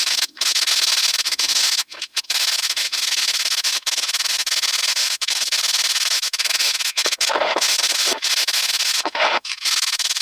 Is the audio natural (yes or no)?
no